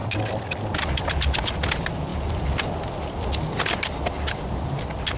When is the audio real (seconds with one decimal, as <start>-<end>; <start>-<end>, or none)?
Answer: 0.0-5.2